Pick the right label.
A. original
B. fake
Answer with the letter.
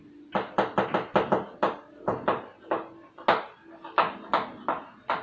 A